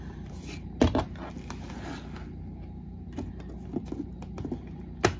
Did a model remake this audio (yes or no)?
no